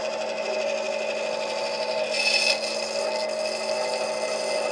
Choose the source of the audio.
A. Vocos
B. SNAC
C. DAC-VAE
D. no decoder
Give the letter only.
D